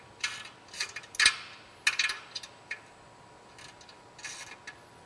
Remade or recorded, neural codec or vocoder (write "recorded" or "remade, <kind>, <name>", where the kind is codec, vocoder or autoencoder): recorded